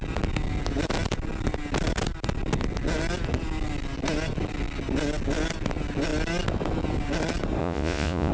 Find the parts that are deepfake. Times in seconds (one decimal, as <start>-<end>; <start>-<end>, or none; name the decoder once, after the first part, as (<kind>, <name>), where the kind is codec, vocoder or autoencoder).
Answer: 7.6-8.3 (vocoder, Vocos)